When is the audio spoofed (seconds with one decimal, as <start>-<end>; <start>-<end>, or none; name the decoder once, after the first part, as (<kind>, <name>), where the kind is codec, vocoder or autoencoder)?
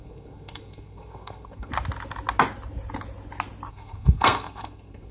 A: 0.0-1.7 (codec, SNAC); 3.7-5.1